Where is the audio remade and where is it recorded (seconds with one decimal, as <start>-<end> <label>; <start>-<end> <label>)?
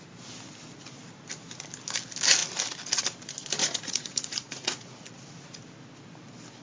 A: 0.0-3.6 recorded; 3.6-5.1 remade; 5.1-6.6 recorded